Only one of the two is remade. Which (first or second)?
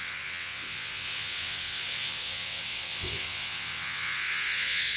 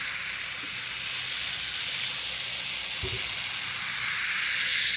first